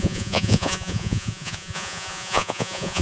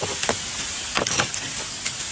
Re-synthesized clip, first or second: first